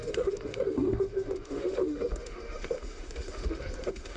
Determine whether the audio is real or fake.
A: fake